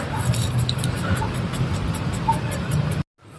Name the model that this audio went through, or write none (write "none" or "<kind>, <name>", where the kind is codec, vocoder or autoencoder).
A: none